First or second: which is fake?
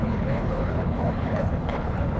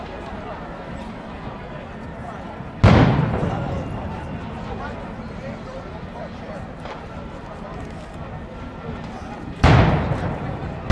first